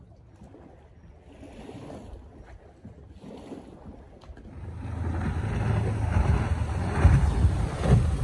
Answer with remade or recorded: recorded